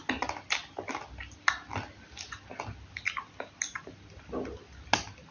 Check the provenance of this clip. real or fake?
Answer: real